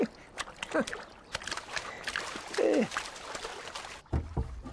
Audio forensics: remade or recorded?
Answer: recorded